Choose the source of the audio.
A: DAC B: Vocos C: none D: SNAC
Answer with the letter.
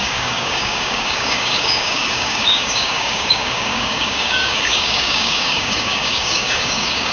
A